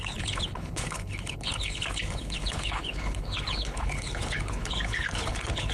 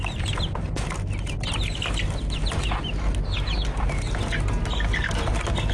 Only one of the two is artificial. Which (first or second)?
first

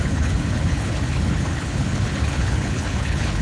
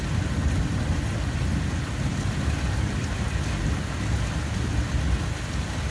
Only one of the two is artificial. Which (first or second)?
first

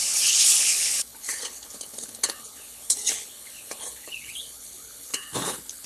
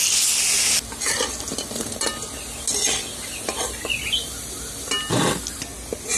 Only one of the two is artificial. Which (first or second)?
first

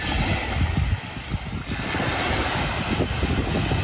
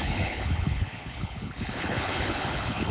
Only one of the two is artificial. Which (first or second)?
second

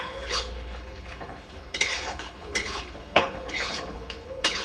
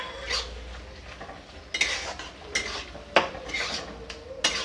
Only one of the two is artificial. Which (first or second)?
first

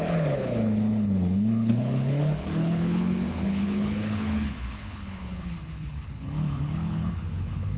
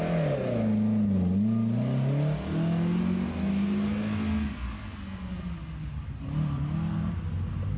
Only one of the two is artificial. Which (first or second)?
first